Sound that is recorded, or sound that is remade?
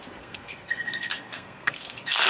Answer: remade